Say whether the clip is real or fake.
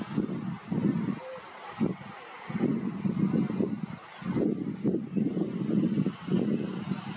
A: real